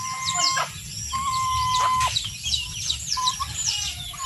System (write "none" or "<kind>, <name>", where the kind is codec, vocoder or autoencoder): none